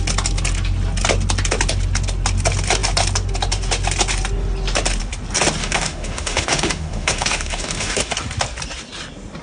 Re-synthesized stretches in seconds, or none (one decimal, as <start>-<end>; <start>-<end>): 5.6-8.1